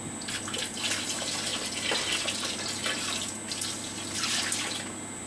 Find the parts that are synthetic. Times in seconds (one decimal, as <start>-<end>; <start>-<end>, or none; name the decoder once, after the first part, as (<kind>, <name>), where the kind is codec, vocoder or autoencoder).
none